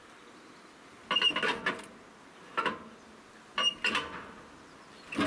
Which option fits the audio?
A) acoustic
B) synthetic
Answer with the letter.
A